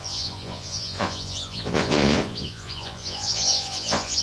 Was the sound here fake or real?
fake